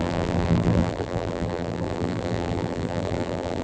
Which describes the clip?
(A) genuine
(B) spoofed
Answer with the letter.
B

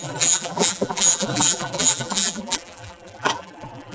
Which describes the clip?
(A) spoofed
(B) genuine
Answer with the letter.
A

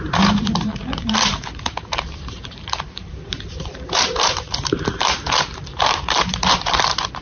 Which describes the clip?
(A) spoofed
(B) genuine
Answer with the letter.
A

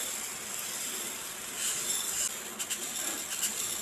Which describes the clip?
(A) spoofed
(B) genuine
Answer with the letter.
B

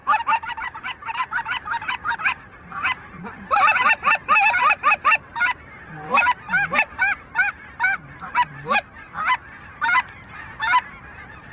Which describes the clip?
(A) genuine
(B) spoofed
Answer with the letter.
B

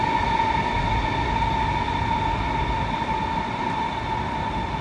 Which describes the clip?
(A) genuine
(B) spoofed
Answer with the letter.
A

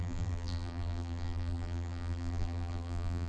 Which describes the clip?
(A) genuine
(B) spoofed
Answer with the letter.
B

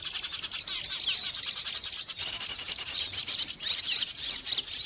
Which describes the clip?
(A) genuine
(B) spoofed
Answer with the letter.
A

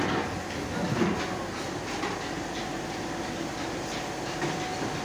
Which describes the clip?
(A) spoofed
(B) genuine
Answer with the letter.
B